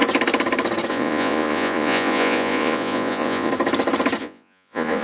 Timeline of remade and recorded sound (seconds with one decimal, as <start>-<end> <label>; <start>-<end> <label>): 0.0-0.9 recorded; 0.9-3.5 remade; 3.5-4.2 recorded; 4.2-5.0 remade